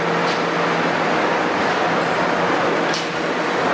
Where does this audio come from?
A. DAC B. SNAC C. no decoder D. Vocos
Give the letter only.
C